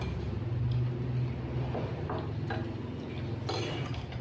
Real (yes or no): yes